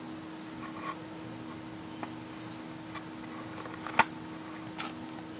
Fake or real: real